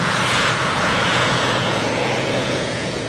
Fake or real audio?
fake